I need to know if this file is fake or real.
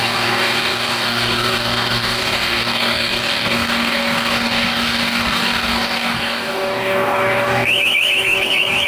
fake